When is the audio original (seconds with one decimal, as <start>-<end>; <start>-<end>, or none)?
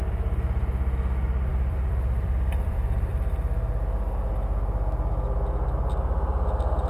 0.0-1.5; 3.1-6.9